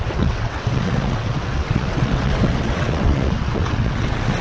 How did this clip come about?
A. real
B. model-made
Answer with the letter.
B